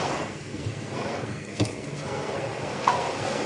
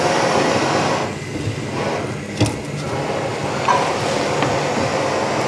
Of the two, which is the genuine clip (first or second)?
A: second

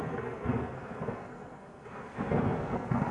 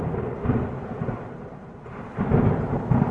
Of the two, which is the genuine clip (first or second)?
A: second